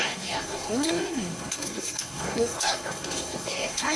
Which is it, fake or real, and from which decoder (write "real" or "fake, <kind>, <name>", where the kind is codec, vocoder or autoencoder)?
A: fake, codec, SNAC